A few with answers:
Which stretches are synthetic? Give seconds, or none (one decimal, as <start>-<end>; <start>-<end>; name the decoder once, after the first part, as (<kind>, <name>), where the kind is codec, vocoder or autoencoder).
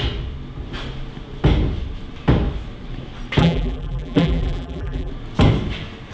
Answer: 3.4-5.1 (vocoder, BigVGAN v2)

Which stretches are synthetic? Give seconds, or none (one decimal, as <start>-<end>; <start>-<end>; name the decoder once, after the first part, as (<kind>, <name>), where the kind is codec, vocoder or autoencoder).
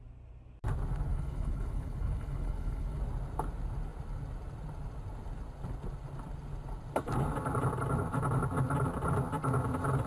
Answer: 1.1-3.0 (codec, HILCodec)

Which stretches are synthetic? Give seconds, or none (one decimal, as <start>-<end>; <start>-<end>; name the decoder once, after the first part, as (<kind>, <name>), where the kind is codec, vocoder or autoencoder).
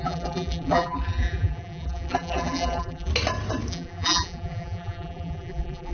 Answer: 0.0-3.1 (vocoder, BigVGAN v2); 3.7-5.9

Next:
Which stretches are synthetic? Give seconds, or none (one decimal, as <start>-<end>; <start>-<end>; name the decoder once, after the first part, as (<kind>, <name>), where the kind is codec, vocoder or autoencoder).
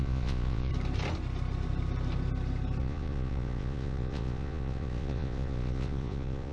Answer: 0.0-0.7 (vocoder, Vocos); 2.8-6.5